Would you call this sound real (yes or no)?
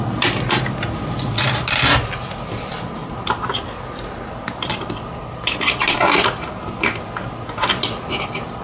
yes